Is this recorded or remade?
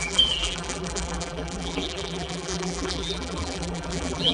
remade